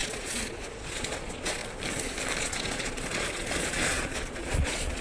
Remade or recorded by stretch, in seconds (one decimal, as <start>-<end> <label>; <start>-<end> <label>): 0.0-1.6 remade; 1.6-2.4 recorded; 2.4-5.0 remade